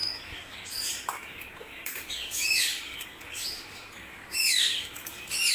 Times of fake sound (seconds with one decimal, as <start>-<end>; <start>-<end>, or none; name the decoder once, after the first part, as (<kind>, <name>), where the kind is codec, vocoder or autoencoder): 0.0-5.5 (codec, DAC)